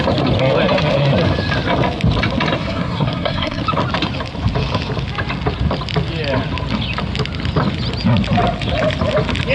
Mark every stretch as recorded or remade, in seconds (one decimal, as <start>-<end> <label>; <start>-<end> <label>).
0.0-2.6 recorded; 2.6-3.6 remade; 3.6-9.5 recorded